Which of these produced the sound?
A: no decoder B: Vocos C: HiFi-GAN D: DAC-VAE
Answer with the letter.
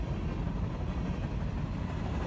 A